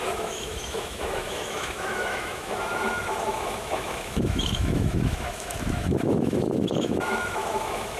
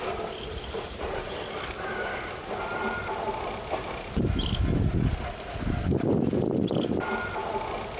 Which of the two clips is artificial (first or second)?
first